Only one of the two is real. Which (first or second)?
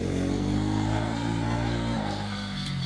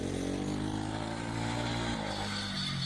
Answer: second